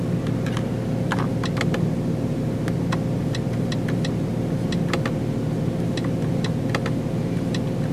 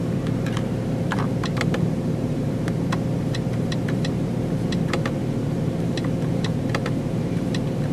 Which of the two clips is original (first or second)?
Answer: first